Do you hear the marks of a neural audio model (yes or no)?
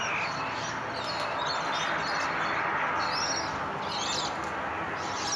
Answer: no